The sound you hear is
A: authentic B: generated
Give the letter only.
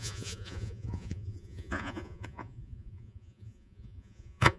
B